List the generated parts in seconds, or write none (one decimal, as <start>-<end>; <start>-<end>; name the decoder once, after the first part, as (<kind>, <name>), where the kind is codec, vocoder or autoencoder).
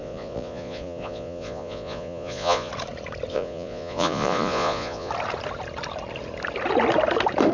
0.0-2.7 (vocoder, Vocos); 3.3-5.1